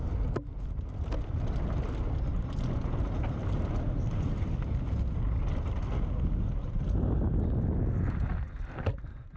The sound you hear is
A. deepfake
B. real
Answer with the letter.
B